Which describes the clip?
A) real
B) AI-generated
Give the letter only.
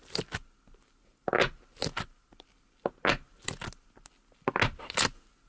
A